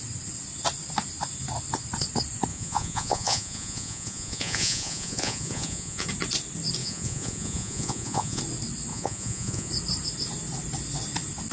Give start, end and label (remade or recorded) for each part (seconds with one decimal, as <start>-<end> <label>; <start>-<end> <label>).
0.0-2.5 recorded; 2.5-6.1 remade; 6.1-6.8 recorded; 6.8-8.4 remade; 8.4-8.9 recorded; 8.9-9.7 remade; 9.7-11.5 recorded